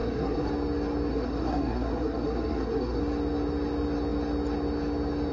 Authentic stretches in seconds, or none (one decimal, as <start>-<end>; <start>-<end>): 0.5-1.1; 3.0-5.3